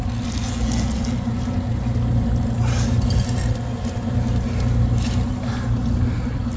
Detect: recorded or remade recorded